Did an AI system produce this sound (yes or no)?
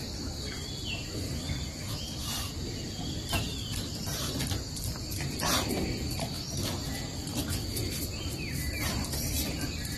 yes